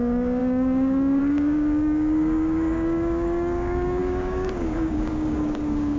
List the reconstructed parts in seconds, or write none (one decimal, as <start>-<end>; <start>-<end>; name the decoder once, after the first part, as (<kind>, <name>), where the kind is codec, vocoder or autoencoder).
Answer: 0.0-6.0 (codec, DAC)